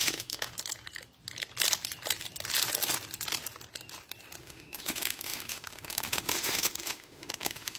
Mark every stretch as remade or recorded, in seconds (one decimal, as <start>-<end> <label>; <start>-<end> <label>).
0.0-0.5 remade; 0.5-4.4 recorded; 4.4-7.8 remade